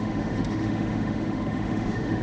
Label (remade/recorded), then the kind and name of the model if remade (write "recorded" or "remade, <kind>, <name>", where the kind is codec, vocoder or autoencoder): remade, autoencoder, DAC-VAE